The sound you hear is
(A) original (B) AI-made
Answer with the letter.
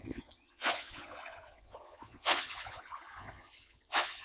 B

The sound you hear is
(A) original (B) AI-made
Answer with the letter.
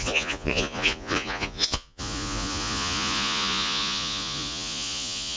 B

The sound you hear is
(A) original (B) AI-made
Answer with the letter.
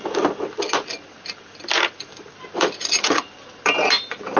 A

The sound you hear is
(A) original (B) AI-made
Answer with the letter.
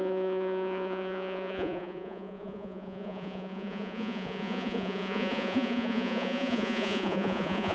B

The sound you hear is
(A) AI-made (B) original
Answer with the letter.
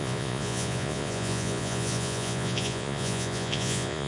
A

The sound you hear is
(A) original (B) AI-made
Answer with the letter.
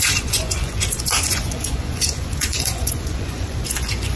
B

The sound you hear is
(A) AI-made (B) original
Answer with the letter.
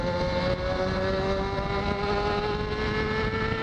B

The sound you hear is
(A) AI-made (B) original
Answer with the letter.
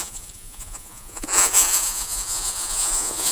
A